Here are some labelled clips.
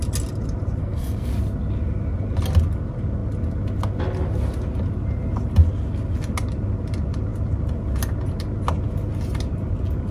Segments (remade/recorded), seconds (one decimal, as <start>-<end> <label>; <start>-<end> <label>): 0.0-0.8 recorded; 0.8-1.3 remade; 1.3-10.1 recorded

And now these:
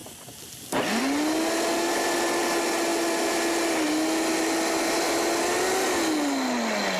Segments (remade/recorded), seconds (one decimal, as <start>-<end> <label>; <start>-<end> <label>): 0.0-7.0 recorded

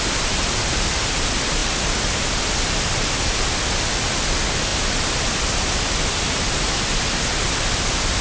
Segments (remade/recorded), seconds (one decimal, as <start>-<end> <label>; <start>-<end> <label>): 0.0-8.2 recorded

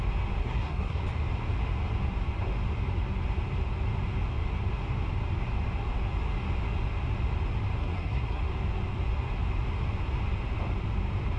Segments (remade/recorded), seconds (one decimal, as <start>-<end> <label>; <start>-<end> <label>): 0.0-0.4 recorded; 0.4-1.0 remade; 1.0-7.8 recorded; 7.8-8.4 remade; 8.4-11.4 recorded

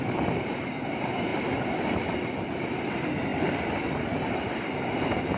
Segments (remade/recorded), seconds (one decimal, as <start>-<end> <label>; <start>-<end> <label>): 0.0-5.4 recorded